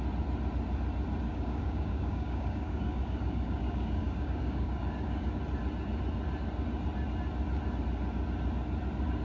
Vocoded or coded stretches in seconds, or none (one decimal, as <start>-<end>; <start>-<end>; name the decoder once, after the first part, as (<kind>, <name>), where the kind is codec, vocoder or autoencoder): 1.3-5.4 (codec, DAC)